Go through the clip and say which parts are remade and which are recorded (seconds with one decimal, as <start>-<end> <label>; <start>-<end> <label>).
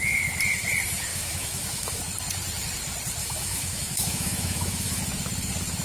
0.0-1.1 recorded; 1.1-2.0 remade; 2.0-3.2 recorded; 3.2-5.0 remade; 5.0-5.8 recorded